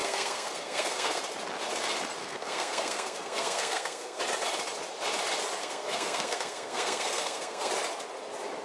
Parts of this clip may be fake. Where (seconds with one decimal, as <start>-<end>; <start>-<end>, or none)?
0.0-1.2; 2.2-4.2; 5.6-7.7